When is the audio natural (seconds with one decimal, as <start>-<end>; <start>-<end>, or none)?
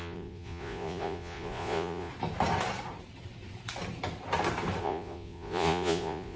2.1-4.8